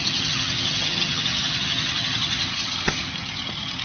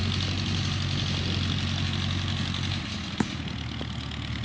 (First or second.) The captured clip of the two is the second